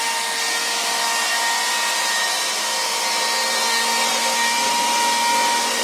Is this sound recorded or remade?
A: recorded